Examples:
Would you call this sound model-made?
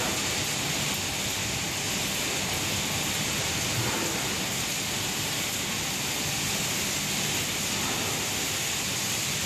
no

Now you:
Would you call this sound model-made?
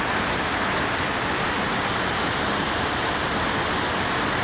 no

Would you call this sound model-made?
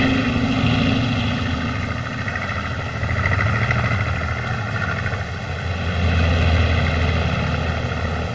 no